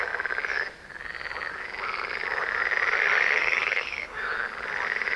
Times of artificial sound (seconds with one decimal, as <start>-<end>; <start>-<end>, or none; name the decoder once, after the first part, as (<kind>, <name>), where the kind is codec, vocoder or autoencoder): 3.4-4.3 (codec, DAC)